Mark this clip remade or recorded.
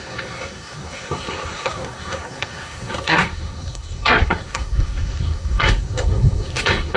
remade